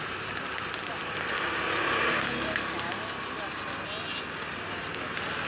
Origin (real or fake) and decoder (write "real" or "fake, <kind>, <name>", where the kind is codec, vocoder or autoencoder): real